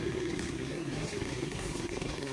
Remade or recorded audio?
remade